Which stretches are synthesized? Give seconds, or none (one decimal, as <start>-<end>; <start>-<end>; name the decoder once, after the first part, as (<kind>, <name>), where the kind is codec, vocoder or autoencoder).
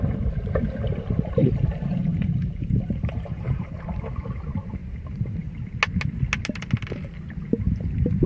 1.4-3.9 (vocoder, BigVGAN v2); 4.8-5.6